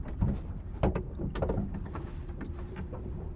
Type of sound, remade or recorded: recorded